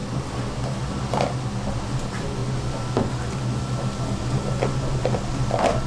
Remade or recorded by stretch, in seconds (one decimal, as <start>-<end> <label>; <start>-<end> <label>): 0.0-5.9 recorded